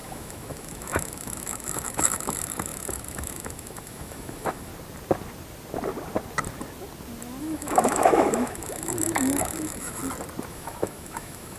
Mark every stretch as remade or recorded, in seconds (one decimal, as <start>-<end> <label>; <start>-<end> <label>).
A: 0.0-4.7 remade; 4.7-7.4 recorded; 7.4-10.0 remade; 10.0-10.5 recorded; 10.5-11.6 remade